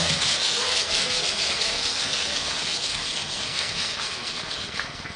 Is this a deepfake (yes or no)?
yes